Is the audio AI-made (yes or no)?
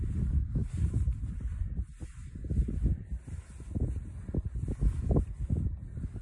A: no